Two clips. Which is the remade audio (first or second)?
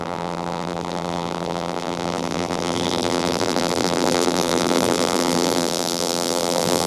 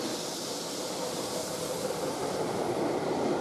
first